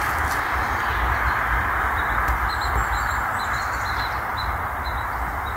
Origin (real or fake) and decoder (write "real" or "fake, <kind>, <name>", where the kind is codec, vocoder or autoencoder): real